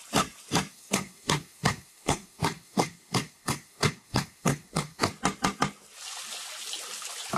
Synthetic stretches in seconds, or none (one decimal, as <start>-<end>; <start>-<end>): 0.7-5.1